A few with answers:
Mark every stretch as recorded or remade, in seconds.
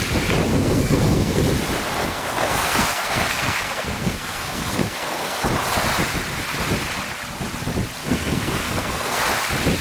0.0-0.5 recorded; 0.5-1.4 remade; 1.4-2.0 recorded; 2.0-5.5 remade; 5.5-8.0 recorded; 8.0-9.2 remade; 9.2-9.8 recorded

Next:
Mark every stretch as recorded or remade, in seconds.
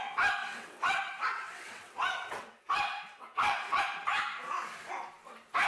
0.0-0.4 recorded; 0.4-3.8 remade; 3.8-5.7 recorded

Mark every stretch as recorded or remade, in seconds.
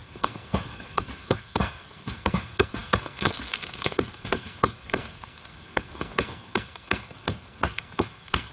0.0-8.5 remade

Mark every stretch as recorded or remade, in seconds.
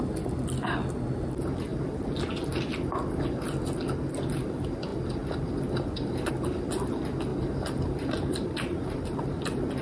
0.0-7.3 recorded; 7.3-9.4 remade; 9.4-9.8 recorded